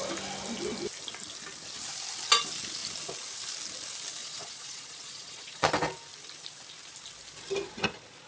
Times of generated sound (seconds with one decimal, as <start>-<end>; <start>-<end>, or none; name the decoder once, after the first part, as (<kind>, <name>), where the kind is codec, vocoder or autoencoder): 4.2-5.7 (vocoder, Vocos)